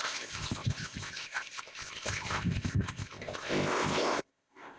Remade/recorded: remade